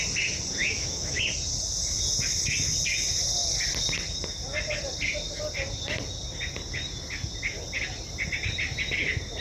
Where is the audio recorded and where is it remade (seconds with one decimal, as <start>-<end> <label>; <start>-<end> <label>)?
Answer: 0.0-0.6 recorded; 0.6-1.2 remade; 1.2-9.4 recorded